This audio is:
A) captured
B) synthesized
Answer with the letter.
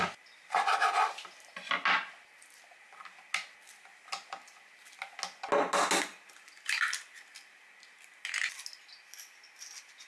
A